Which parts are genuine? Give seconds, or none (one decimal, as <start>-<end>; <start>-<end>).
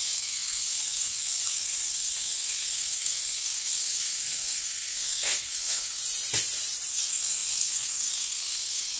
6.0-6.9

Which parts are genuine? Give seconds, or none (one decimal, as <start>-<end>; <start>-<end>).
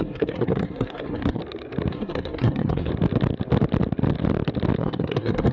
1.4-1.9; 2.9-4.8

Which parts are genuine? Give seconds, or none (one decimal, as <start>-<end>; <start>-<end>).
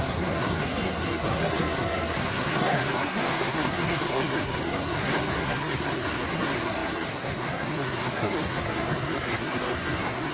none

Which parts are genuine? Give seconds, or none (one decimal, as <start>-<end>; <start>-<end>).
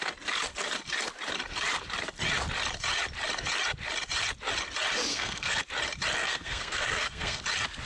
0.0-5.1; 5.6-6.2; 7.4-7.9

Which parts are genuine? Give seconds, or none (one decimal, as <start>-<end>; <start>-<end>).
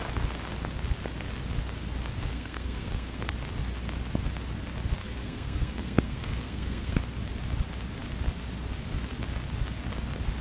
0.0-2.3; 3.3-5.0; 7.0-10.4